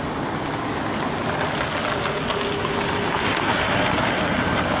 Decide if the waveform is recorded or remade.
recorded